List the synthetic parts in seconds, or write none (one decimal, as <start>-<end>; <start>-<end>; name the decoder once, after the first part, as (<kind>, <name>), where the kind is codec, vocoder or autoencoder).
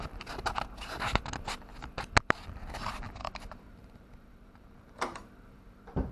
3.2-6.1 (vocoder, BigVGAN v2)